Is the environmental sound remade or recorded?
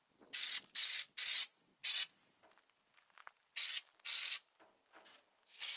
recorded